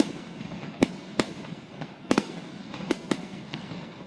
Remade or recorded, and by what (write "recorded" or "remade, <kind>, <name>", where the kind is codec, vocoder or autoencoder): remade, codec, SNAC